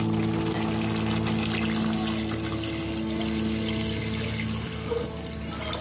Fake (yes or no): no